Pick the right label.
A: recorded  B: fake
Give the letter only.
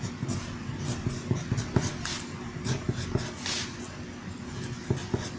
A